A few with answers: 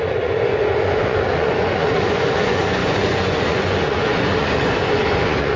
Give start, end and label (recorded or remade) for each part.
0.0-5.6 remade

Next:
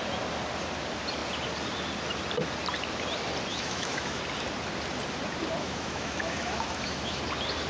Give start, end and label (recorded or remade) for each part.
0.0-3.5 recorded; 3.5-4.2 remade; 4.2-5.6 recorded; 5.6-7.2 remade; 7.2-7.7 recorded

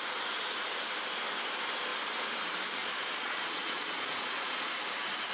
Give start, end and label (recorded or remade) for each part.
0.0-2.8 recorded; 2.8-4.7 remade; 4.7-5.3 recorded

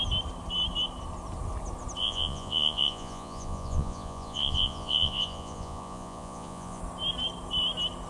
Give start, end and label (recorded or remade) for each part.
0.0-2.0 recorded; 2.0-6.8 remade; 6.8-8.1 recorded